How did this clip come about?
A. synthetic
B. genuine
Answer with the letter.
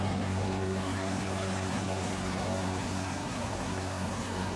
A